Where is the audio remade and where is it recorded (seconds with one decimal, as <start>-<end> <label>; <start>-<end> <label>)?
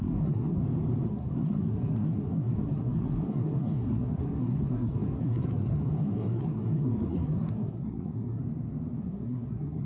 0.0-0.6 remade; 0.6-1.1 recorded; 1.1-8.4 remade; 8.4-9.0 recorded; 9.0-9.8 remade